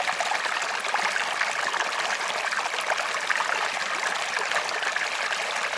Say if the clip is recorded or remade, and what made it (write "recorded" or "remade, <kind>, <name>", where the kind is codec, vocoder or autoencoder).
recorded